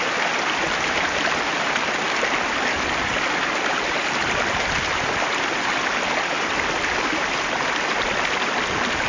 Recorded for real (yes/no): yes